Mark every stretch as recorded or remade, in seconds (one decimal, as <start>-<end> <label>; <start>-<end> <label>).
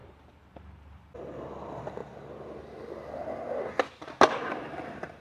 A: 0.0-2.0 remade; 2.0-4.3 recorded; 4.3-5.2 remade